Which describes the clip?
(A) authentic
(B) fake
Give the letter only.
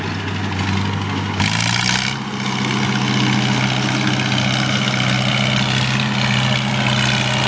A